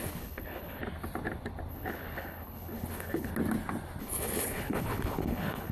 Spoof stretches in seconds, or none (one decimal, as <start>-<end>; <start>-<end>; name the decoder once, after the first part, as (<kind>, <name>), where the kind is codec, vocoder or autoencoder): 0.0-0.8 (codec, HILCodec); 1.7-3.3; 4.0-5.7